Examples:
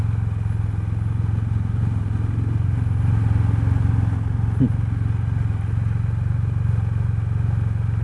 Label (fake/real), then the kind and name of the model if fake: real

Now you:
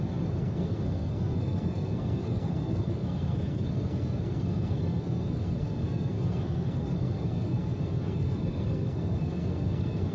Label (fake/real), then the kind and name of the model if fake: fake, codec, SNAC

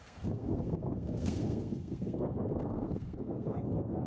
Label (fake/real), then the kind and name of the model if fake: fake, codec, SNAC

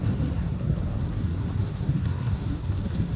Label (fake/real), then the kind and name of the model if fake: fake, codec, SNAC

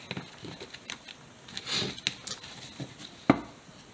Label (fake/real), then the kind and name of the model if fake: real